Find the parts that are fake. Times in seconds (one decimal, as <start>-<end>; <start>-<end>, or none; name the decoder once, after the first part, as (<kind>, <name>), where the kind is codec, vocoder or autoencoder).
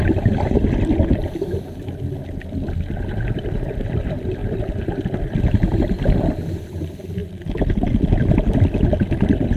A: none